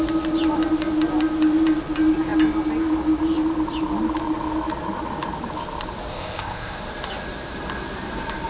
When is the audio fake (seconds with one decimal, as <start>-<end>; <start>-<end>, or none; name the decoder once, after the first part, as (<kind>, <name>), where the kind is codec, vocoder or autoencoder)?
6.1-6.8 (codec, ZipCodec)

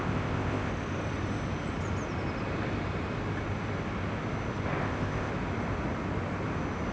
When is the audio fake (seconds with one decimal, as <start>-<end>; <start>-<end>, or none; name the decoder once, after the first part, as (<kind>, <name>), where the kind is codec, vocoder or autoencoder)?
0.0-0.7 (codec, ZipCodec); 4.8-5.3

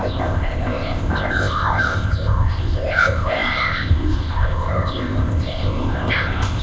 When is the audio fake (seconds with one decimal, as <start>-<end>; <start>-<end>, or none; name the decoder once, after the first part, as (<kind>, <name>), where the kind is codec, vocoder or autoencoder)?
0.0-6.6 (codec, ZipCodec)

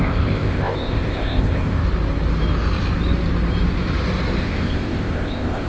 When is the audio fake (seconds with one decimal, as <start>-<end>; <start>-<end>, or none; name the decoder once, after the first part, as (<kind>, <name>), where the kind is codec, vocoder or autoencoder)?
0.0-1.8 (codec, ZipCodec); 4.4-5.7

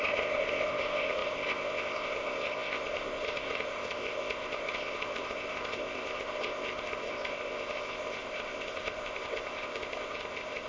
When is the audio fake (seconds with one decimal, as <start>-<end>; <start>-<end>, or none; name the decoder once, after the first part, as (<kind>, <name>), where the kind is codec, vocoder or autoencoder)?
0.0-10.7 (codec, ZipCodec)